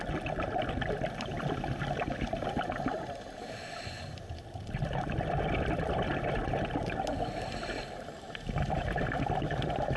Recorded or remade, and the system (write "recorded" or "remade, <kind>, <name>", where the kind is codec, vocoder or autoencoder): recorded